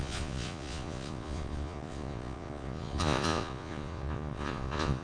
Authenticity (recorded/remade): remade